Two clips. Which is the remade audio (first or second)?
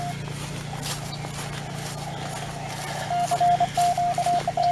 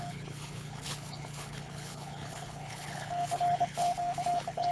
second